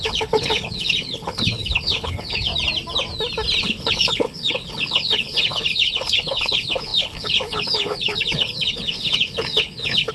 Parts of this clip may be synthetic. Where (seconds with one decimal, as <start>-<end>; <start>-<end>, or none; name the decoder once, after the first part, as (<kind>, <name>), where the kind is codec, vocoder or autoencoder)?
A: 0.0-2.5 (codec, HILCodec); 3.6-10.1